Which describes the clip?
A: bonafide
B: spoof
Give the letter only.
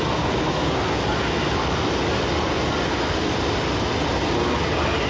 A